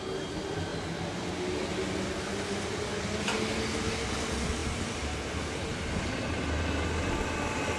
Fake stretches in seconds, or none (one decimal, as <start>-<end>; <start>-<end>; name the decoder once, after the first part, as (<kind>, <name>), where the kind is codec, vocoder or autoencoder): none